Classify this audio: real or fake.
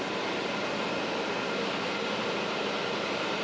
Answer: real